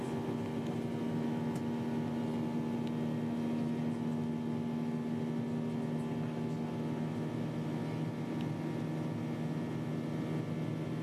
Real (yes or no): yes